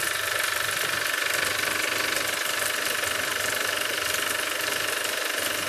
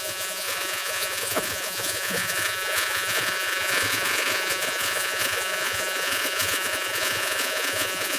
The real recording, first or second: first